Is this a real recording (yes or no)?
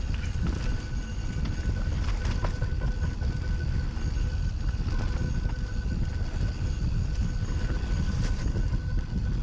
yes